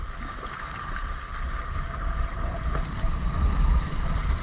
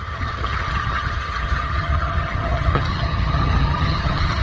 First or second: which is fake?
second